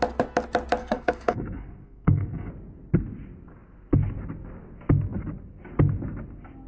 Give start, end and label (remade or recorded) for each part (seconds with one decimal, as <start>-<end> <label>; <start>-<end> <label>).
0.0-0.8 recorded; 0.8-2.5 remade; 2.5-6.7 recorded